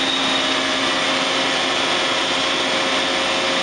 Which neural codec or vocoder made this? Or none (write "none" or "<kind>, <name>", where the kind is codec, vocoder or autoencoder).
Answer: none